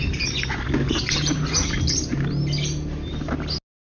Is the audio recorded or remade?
recorded